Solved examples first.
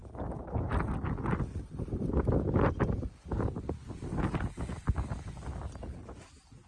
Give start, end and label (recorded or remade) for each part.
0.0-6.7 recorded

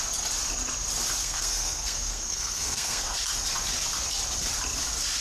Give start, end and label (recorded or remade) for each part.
0.0-1.2 recorded; 1.2-3.2 remade; 3.2-5.2 recorded